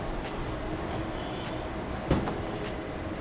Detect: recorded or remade recorded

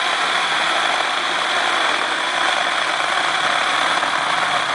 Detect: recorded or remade recorded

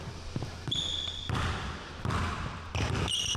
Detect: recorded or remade remade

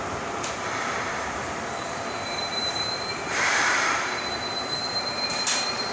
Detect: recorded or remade remade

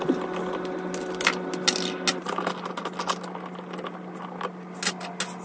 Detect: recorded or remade recorded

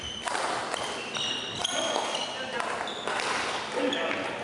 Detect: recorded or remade recorded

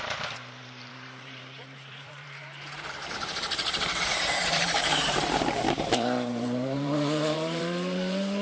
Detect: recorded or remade remade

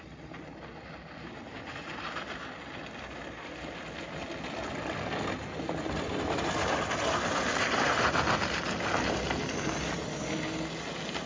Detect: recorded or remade recorded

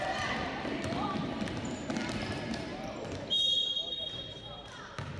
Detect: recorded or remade remade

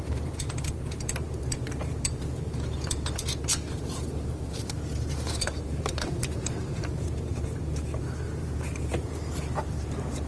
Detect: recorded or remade remade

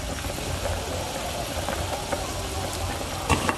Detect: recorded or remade recorded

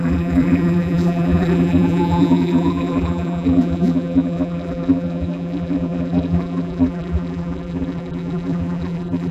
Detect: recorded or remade remade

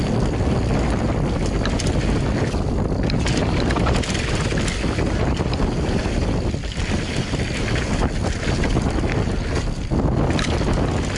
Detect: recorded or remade recorded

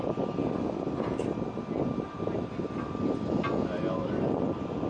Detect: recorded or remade recorded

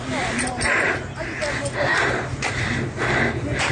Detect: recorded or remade recorded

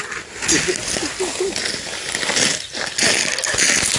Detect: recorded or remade recorded